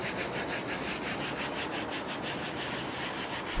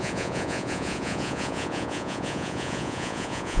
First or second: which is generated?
second